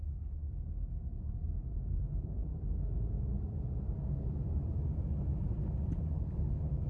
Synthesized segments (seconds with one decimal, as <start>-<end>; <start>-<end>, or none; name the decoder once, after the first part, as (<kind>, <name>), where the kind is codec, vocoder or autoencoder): 0.0-0.4 (codec, HILCodec); 2.0-2.5; 6.5-6.9